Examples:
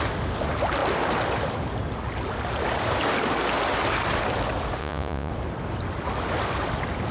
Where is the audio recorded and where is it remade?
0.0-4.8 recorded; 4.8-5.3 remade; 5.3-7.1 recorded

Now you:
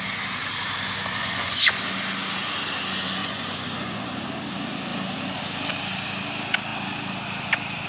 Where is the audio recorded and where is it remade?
0.0-1.2 recorded; 1.2-1.8 remade; 1.8-3.2 recorded; 3.2-4.2 remade; 4.2-7.9 recorded

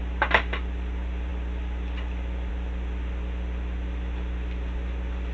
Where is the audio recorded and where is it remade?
0.0-5.3 recorded

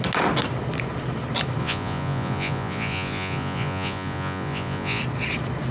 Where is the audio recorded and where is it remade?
0.0-1.6 recorded; 1.6-5.0 remade; 5.0-5.7 recorded

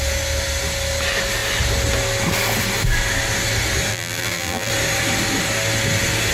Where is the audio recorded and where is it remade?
0.0-3.9 recorded; 3.9-4.7 remade; 4.7-6.3 recorded